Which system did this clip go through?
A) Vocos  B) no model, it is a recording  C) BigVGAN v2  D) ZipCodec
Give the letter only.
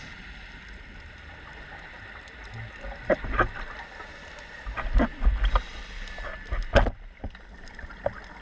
B